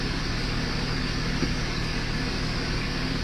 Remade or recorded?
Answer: remade